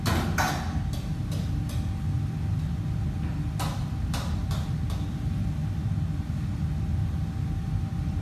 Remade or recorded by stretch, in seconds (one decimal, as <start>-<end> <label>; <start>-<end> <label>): 0.0-8.2 recorded